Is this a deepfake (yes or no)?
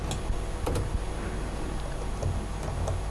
no